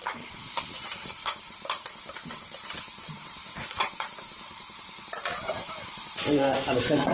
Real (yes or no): no